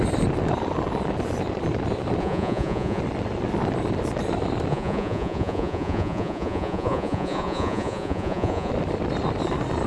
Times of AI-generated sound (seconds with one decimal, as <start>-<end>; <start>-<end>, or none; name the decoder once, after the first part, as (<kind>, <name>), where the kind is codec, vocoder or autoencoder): 2.2-3.0 (vocoder, Vocos); 4.7-8.7

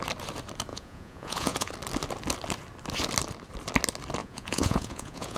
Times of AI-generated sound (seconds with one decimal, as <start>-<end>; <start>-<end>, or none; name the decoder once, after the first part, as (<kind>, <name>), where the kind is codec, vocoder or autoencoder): 0.7-1.7 (vocoder, Vocos); 4.2-5.4

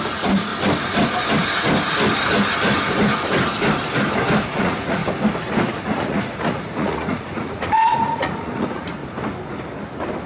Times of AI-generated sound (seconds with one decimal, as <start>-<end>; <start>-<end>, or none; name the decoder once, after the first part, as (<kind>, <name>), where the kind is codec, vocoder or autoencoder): 0.0-0.5 (vocoder, Vocos); 4.5-5.0; 6.0-9.0

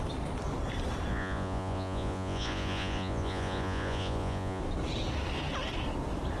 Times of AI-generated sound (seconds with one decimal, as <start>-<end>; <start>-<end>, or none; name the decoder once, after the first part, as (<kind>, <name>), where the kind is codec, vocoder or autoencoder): 1.1-4.6 (vocoder, Vocos)

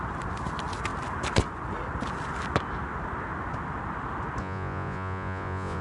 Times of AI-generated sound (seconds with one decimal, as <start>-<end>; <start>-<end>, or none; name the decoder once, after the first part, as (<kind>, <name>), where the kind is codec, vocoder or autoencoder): 4.4-5.8 (vocoder, Vocos)

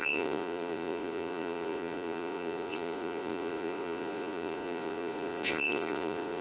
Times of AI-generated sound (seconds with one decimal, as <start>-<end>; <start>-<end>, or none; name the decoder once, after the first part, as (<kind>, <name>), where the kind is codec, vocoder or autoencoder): 0.0-6.4 (vocoder, Vocos)

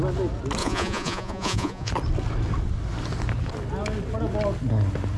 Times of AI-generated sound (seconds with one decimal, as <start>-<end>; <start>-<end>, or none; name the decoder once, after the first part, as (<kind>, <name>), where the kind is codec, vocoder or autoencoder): 0.6-1.9 (vocoder, Vocos)

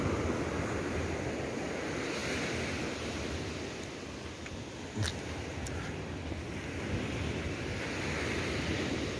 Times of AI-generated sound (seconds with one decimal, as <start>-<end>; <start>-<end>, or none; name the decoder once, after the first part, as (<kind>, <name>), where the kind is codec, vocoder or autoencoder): none